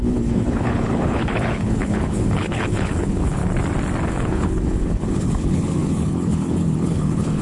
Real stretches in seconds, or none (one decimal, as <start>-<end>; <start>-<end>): 3.4-4.1